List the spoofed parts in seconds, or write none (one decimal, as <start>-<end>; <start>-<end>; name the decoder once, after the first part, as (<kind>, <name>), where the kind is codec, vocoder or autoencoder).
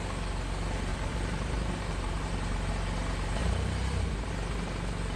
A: 0.9-2.7 (vocoder, BigVGAN v2); 3.4-4.3